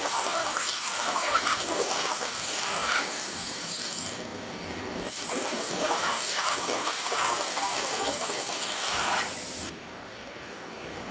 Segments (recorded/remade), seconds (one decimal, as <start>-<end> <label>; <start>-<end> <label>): 0.0-9.1 remade; 9.1-9.6 recorded; 9.6-11.1 remade